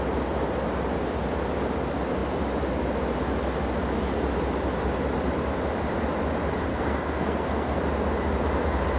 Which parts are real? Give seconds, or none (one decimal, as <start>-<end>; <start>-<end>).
0.0-6.7; 7.8-9.0